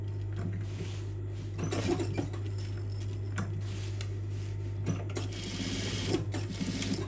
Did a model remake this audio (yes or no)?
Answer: no